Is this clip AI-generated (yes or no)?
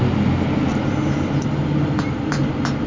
no